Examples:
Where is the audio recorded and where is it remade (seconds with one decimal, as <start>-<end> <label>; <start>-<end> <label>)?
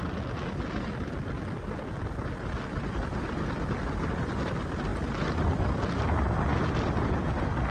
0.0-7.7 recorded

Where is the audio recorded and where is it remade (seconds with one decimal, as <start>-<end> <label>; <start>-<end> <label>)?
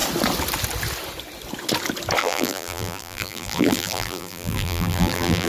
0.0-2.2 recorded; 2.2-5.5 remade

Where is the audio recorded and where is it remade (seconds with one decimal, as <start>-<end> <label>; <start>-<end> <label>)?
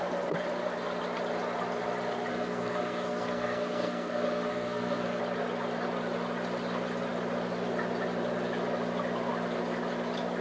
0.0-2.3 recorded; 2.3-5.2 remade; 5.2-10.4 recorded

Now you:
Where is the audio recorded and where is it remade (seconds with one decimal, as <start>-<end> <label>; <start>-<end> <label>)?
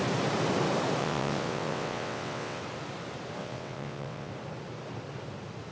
0.0-1.0 recorded; 1.0-2.6 remade; 2.6-3.4 recorded; 3.4-4.3 remade; 4.3-5.7 recorded